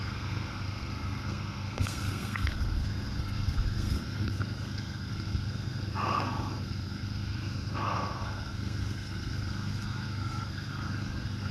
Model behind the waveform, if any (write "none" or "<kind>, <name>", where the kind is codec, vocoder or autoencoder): codec, SNAC